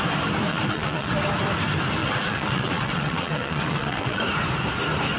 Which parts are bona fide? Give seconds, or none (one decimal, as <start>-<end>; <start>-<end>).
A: 0.0-0.5; 1.1-2.0; 4.2-5.2